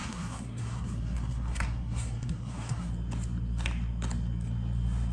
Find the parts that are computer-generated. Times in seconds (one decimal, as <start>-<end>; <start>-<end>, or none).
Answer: 0.0-2.9